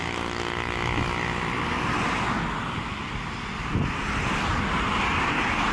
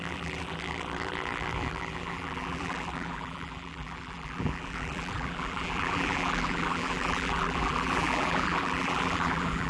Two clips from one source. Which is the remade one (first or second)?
second